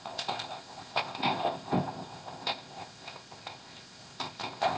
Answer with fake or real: fake